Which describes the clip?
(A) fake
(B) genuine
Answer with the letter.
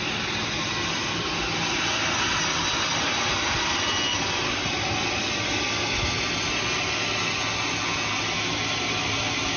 B